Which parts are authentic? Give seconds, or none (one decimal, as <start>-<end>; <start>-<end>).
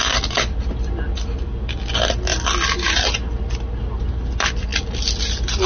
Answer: 0.0-5.7